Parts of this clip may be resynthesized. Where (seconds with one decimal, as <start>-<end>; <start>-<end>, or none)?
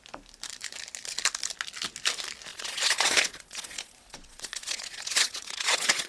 2.5-6.1